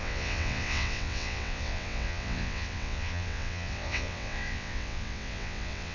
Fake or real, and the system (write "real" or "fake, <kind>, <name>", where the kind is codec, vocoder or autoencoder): fake, vocoder, WaveNeXt